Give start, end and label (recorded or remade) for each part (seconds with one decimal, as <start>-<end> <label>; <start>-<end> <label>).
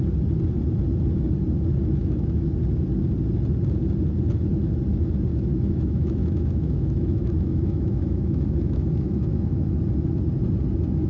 0.0-2.0 recorded; 2.0-2.5 remade; 2.5-5.3 recorded; 5.3-9.8 remade; 9.8-11.1 recorded